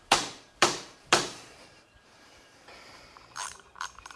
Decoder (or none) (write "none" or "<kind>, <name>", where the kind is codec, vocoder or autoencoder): vocoder, BigVGAN v2